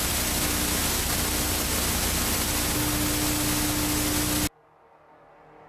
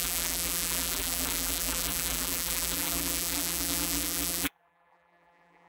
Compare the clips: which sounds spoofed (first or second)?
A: second